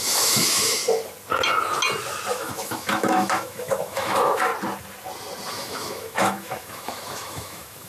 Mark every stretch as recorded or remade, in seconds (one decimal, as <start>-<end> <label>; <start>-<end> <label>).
0.0-0.8 remade; 0.8-2.3 recorded; 2.3-4.5 remade; 4.5-5.5 recorded; 5.5-7.9 remade